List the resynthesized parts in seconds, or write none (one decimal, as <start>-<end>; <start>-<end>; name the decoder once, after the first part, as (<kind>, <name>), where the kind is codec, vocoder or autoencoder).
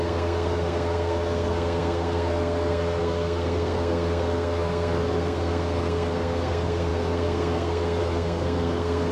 0.0-9.1 (codec, SNAC)